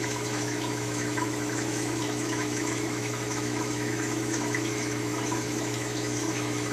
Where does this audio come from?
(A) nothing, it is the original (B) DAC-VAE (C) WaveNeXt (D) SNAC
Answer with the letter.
B